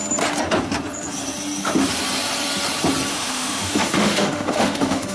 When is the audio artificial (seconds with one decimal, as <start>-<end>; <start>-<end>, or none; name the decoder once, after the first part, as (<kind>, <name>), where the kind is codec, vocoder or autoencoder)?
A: 3.1-5.1 (autoencoder, DAC-VAE)